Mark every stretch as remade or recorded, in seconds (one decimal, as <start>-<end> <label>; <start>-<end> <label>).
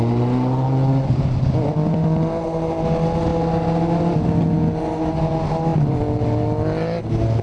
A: 0.0-7.4 recorded